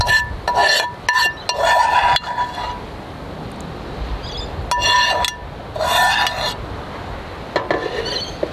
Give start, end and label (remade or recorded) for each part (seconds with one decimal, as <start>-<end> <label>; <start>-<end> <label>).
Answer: 0.0-8.5 recorded

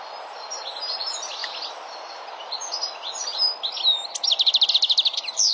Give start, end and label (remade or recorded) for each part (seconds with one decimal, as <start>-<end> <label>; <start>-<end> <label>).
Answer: 0.0-5.5 recorded

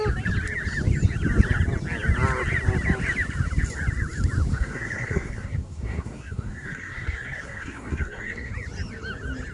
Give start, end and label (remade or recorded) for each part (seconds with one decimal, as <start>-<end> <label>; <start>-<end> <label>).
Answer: 0.0-4.5 recorded; 4.5-8.5 remade; 8.5-9.5 recorded

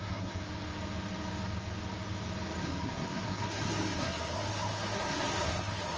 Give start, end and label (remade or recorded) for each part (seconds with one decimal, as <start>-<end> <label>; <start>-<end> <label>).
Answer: 0.0-0.4 remade; 0.4-2.6 recorded; 2.6-6.0 remade

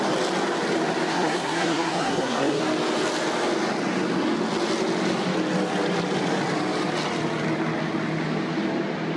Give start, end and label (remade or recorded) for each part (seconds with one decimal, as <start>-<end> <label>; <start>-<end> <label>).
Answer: 0.0-1.1 recorded; 1.1-2.6 remade; 2.6-9.2 recorded

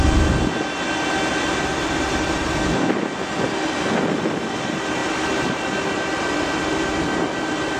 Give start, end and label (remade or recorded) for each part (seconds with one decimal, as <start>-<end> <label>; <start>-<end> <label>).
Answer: 0.0-7.8 recorded

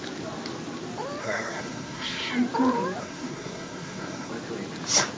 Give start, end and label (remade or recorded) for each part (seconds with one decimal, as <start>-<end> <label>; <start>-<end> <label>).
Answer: 0.0-1.2 recorded; 1.2-2.3 remade; 2.3-3.0 recorded; 3.0-4.3 remade; 4.3-5.2 recorded